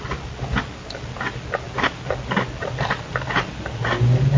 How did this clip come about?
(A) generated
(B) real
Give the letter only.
B